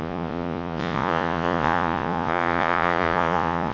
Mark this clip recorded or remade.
remade